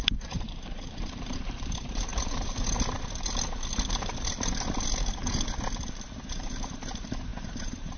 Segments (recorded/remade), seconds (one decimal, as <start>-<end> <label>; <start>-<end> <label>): 0.0-2.1 remade; 2.1-5.9 recorded; 5.9-8.0 remade